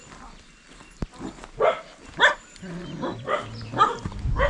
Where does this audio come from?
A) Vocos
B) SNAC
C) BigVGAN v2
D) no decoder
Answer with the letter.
D